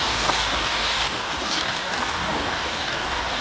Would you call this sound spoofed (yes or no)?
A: yes